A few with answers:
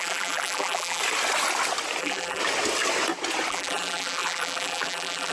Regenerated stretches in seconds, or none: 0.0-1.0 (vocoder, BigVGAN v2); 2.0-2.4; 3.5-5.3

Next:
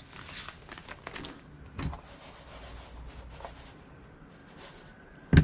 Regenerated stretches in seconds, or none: none

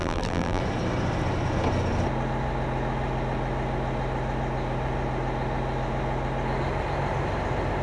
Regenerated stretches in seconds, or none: 0.0-0.6 (vocoder, BigVGAN v2)

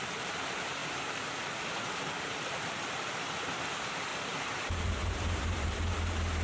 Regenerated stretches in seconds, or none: 4.1-5.7 (vocoder, BigVGAN v2)

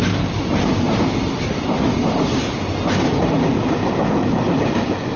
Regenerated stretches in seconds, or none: none

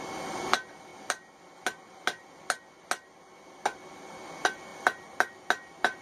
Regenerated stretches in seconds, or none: 4.7-5.3 (vocoder, BigVGAN v2)

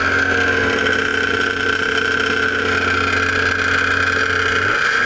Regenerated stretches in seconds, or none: none

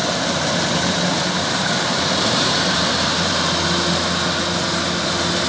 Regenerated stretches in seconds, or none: 0.0-3.3 (vocoder, BigVGAN v2)